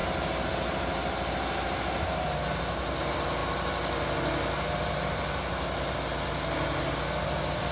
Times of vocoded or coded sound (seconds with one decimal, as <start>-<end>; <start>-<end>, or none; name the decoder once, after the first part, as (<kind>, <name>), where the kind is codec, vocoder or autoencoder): none